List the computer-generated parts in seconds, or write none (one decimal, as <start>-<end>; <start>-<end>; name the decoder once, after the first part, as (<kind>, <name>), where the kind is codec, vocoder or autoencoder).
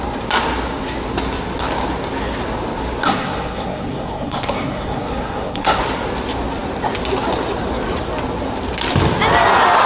3.0-5.8 (codec, SNAC)